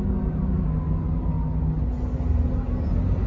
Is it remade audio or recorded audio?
recorded